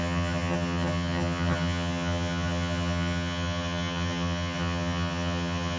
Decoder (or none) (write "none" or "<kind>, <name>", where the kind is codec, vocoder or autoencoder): vocoder, HiFi-GAN